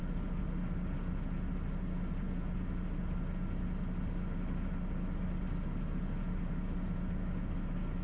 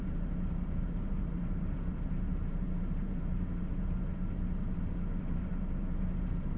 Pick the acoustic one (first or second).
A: first